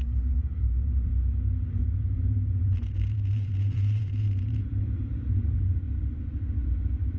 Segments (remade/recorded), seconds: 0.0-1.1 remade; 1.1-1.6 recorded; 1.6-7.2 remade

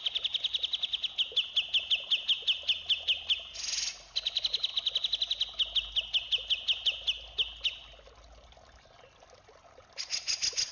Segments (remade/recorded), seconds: 0.0-10.7 recorded

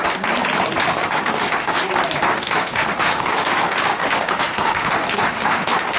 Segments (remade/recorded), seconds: 0.0-0.8 recorded; 0.8-1.8 remade; 1.8-2.3 recorded; 2.3-6.0 remade

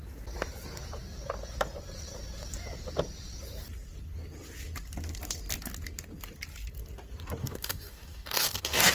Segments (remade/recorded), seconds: 0.0-7.4 recorded; 7.4-8.9 remade

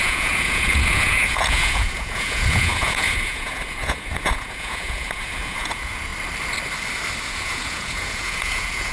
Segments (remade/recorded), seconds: 0.0-6.1 remade; 6.1-7.2 recorded; 7.2-8.9 remade

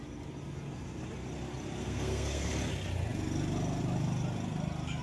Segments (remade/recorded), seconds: 0.0-1.8 recorded; 1.8-2.5 remade; 2.5-5.0 recorded

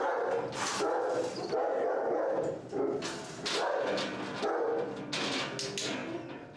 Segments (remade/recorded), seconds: 0.0-6.6 recorded